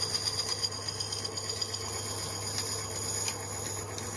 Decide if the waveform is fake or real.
real